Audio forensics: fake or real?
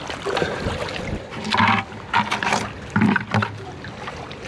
real